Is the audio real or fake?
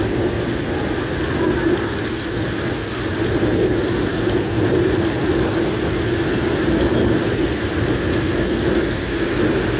real